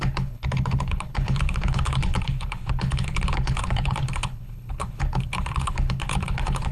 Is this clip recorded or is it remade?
remade